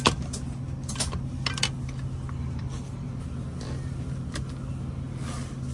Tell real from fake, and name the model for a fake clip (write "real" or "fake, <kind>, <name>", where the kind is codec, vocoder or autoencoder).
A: real